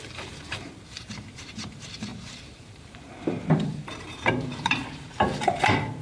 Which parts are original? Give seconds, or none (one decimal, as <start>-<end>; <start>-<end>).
none